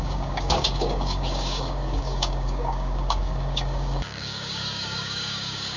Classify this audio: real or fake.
fake